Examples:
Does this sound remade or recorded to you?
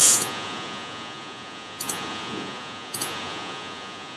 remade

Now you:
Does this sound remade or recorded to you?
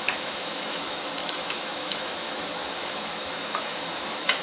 remade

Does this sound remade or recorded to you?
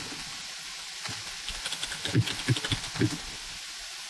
recorded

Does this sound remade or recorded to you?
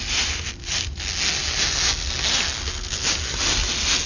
recorded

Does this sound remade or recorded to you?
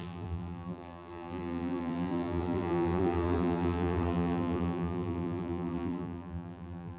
remade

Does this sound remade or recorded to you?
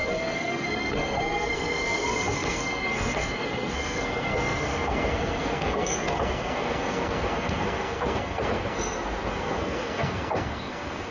remade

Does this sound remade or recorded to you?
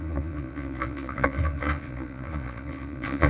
remade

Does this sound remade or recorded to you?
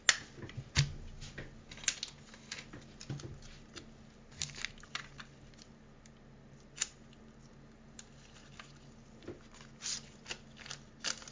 recorded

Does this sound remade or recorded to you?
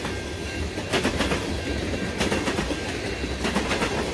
recorded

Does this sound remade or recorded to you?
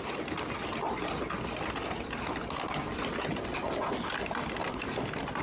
recorded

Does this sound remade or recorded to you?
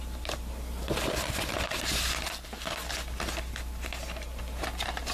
recorded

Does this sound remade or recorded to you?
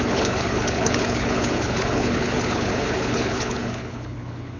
remade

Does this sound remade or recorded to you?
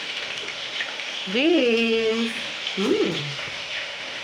remade